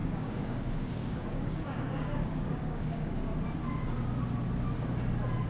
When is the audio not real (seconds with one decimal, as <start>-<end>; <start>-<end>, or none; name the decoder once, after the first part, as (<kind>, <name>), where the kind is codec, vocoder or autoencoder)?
0.0-3.3 (codec, DAC)